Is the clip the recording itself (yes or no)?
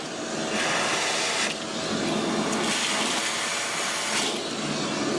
yes